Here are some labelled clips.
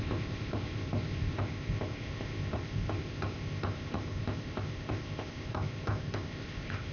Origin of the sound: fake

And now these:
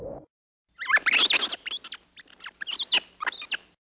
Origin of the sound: real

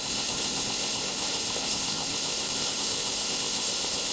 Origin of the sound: fake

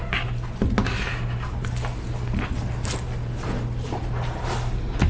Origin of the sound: real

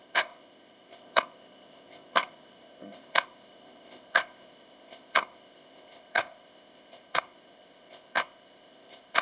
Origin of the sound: fake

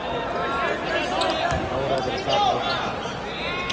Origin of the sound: real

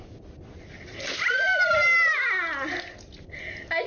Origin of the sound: real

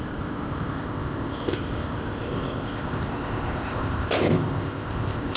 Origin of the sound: fake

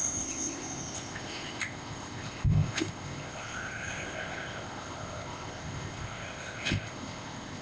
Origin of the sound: fake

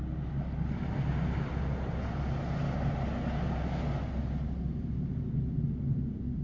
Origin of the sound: real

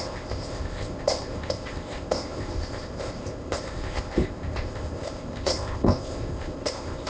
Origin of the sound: fake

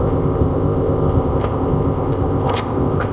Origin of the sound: fake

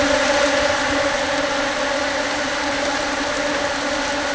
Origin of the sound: real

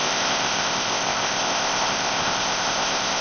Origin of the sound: fake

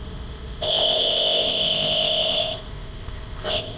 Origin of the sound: fake